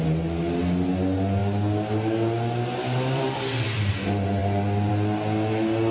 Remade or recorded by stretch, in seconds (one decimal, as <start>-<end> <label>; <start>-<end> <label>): 0.0-1.4 recorded; 1.4-3.9 remade; 3.9-5.9 recorded